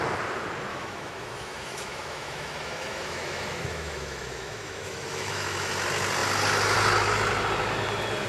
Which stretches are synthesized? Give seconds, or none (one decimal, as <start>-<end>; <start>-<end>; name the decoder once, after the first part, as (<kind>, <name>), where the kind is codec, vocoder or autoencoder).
0.7-5.7 (autoencoder, DAC-VAE)